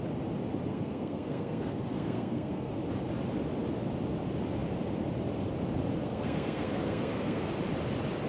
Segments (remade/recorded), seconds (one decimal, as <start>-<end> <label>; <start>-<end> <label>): 0.0-0.7 recorded; 0.7-2.7 remade; 2.7-6.0 recorded; 6.0-7.5 remade; 7.5-8.3 recorded